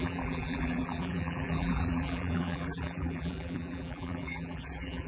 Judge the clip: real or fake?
fake